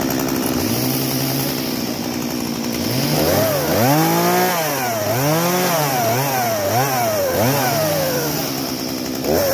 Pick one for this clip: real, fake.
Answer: real